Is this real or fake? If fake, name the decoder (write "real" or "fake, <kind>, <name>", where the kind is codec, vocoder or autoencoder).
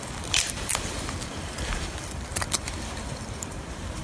fake, vocoder, BigVGAN v2